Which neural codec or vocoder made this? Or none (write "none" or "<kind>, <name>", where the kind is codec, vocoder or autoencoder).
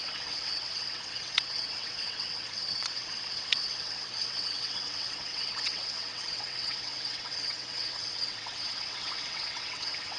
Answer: vocoder, WaveNeXt